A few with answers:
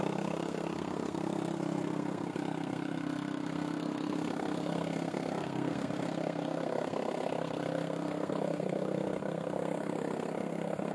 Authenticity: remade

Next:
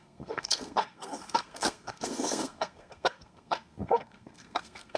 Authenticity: remade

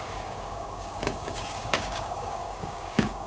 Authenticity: remade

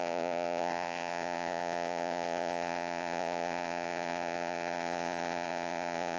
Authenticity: remade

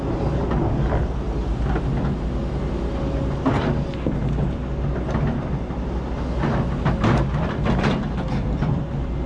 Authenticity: recorded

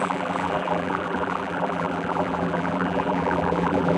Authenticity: remade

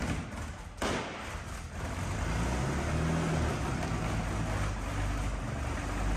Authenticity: recorded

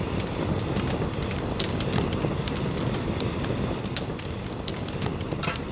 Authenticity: recorded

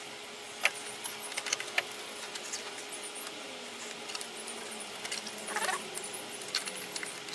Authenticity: recorded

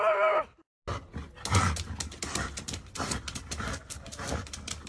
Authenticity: recorded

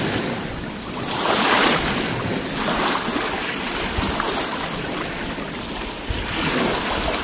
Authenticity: recorded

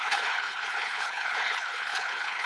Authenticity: remade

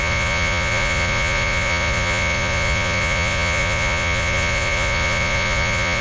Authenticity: remade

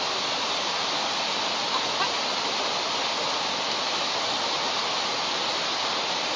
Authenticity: recorded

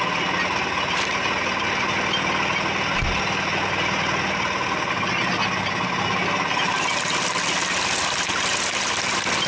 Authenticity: recorded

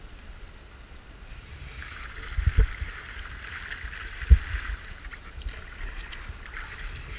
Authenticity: recorded